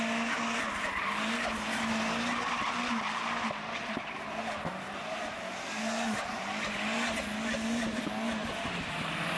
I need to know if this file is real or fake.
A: real